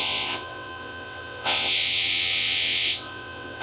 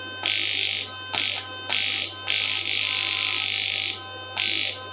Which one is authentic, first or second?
second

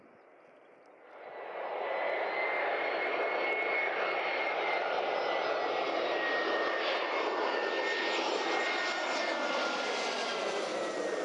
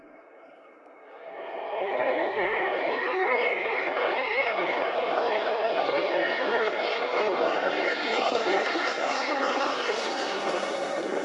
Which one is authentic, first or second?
first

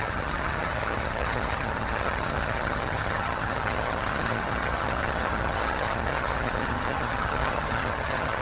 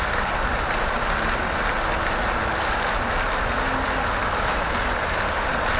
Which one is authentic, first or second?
second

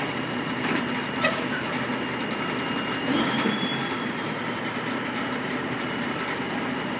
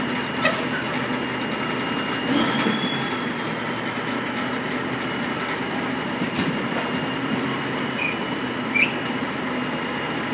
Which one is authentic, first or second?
second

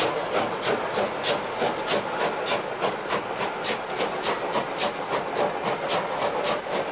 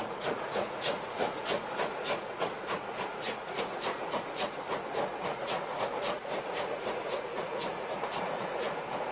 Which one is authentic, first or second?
first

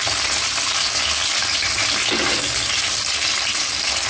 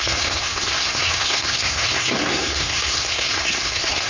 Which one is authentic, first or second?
first